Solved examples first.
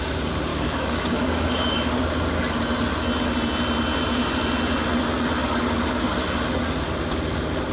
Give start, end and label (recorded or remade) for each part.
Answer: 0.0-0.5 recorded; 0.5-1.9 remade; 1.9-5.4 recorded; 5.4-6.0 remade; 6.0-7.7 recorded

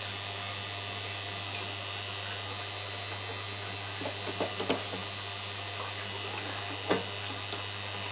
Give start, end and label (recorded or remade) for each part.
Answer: 0.0-8.1 recorded

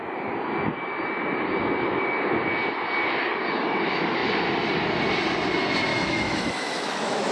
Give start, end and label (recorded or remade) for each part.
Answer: 0.0-5.9 recorded; 5.9-7.3 remade

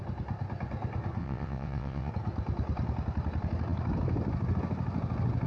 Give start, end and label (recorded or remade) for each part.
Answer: 0.0-1.2 recorded; 1.2-2.1 remade; 2.1-5.5 recorded

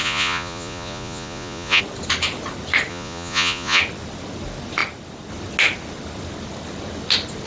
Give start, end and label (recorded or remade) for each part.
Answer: 0.0-1.8 remade; 1.8-2.9 recorded; 2.9-3.8 remade; 3.8-7.5 recorded

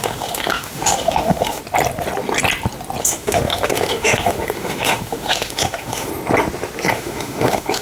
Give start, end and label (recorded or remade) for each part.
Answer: 0.0-1.6 remade; 1.6-3.0 recorded; 3.0-6.1 remade; 6.1-6.9 recorded; 6.9-7.8 remade

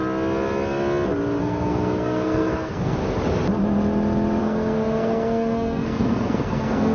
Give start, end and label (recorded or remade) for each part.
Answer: 0.0-1.4 recorded; 1.4-3.0 remade; 3.0-4.4 recorded; 4.4-6.9 remade

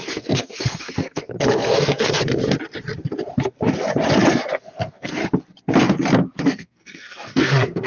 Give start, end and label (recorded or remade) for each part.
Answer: 0.0-2.4 remade; 2.4-4.5 recorded; 4.5-5.2 remade; 5.2-6.4 recorded; 6.4-7.9 remade